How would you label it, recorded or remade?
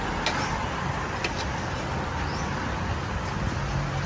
recorded